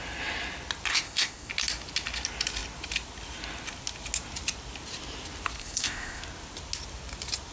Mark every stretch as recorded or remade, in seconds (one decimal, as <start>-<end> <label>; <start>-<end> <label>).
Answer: 0.0-0.9 recorded; 0.9-1.5 remade; 1.5-5.6 recorded; 5.6-6.2 remade; 6.2-7.5 recorded